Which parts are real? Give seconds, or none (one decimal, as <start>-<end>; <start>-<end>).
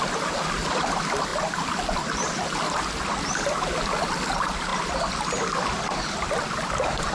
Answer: 0.0-7.1